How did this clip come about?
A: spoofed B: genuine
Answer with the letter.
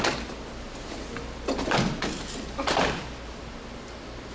B